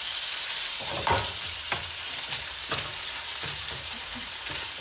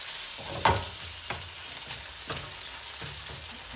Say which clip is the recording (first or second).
second